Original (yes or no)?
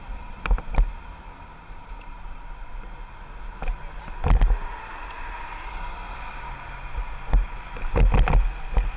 yes